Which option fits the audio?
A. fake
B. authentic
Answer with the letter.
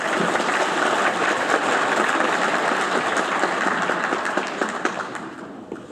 B